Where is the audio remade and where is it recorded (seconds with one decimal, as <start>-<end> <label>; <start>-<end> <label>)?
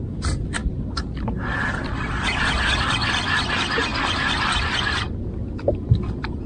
0.0-3.9 recorded; 3.9-5.3 remade; 5.3-6.5 recorded